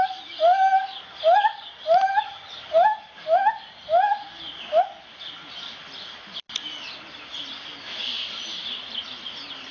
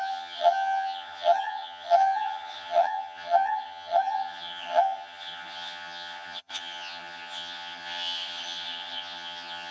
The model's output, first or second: second